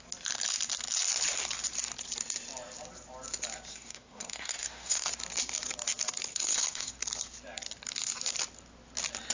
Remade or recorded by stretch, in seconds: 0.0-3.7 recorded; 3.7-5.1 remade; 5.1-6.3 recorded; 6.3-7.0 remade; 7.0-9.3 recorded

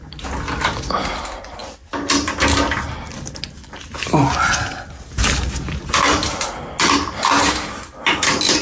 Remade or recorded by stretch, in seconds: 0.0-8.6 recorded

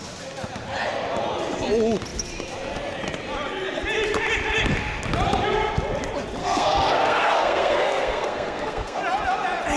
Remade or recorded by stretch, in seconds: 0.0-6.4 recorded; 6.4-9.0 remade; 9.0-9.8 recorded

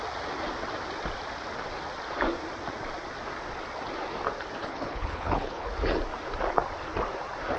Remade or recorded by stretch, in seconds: 0.0-4.6 recorded; 4.6-5.7 remade; 5.7-7.6 recorded

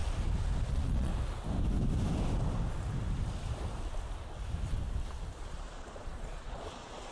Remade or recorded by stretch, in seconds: 0.0-0.7 recorded; 0.7-1.1 remade; 1.1-5.4 recorded; 5.4-7.1 remade